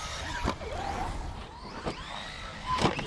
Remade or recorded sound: recorded